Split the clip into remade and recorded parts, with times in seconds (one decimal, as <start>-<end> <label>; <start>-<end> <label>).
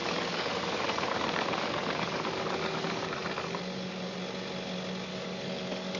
0.0-3.6 remade; 3.6-5.1 recorded; 5.1-6.0 remade